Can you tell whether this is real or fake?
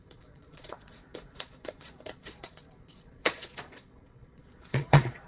fake